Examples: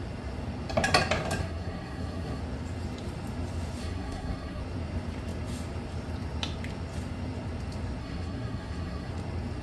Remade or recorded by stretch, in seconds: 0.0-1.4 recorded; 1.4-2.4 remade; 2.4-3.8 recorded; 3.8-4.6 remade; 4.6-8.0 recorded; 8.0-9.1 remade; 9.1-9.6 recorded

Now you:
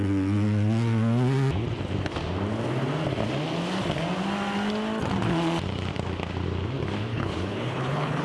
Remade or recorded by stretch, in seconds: 0.0-7.1 recorded; 7.1-8.2 remade